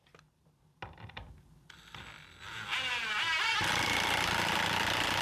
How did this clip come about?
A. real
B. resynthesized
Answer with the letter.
A